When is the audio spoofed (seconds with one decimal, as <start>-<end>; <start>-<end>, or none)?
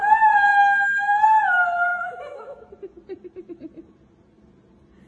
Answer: 0.5-1.1; 1.9-2.7